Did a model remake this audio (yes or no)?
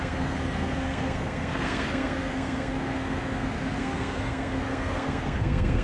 yes